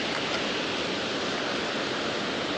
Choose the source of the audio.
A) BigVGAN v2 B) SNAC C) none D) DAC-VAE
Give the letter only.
C